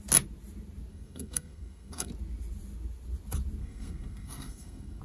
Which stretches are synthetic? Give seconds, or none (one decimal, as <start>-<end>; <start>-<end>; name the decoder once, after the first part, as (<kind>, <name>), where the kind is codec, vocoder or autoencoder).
0.9-2.1 (codec, SNAC); 3.6-5.0